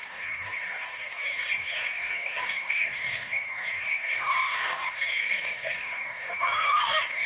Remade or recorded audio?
remade